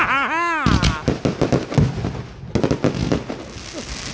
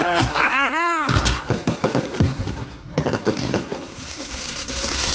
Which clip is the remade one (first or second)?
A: second